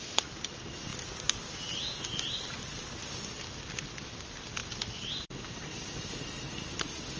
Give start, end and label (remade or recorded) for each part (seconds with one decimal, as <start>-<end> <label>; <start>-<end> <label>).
0.0-7.2 recorded